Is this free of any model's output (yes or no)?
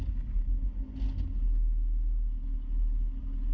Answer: yes